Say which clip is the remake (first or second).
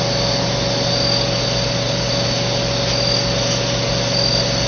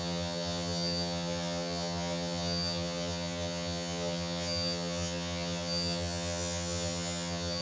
second